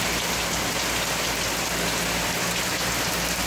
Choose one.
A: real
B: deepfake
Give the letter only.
A